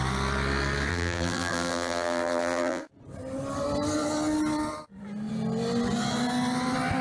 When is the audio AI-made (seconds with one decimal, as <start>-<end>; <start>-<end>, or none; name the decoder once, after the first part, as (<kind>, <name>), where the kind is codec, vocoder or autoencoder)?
0.9-2.8 (vocoder, BigVGAN v2)